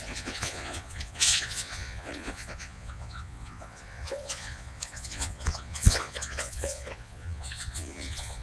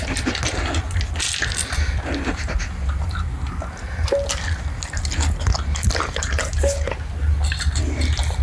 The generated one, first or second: first